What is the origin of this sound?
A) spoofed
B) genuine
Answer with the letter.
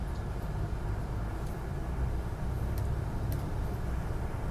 B